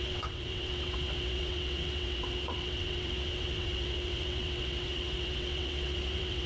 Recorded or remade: remade